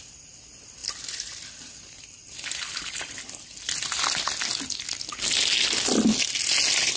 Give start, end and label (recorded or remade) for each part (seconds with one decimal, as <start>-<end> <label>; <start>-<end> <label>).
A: 0.0-7.0 recorded